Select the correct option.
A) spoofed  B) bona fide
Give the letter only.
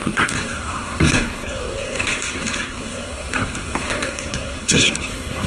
A